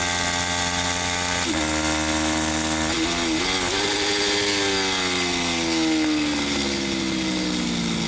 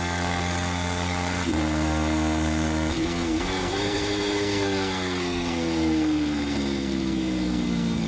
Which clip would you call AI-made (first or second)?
second